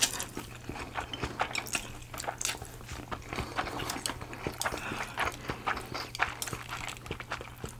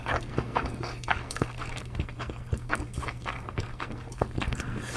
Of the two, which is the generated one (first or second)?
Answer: second